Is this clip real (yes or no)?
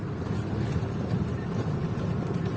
yes